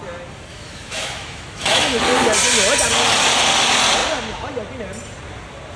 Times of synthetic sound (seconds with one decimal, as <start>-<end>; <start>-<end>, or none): 0.5-2.0